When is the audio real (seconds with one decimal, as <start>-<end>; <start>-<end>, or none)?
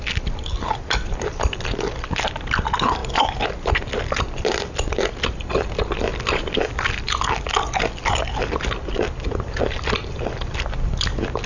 0.0-11.5